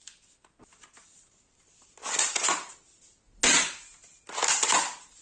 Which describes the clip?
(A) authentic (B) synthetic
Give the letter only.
A